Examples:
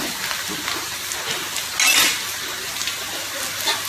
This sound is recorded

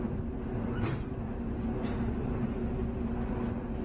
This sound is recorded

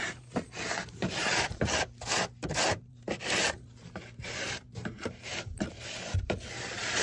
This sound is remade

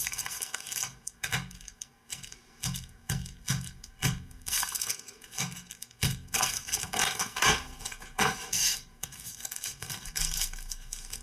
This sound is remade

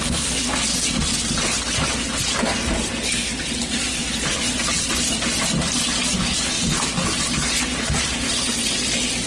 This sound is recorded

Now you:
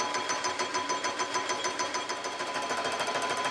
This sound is recorded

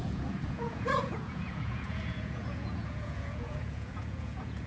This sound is remade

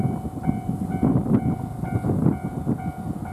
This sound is recorded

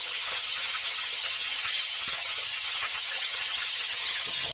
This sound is remade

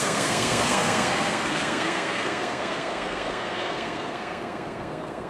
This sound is remade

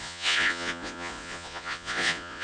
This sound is remade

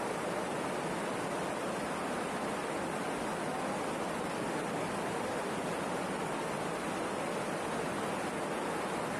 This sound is recorded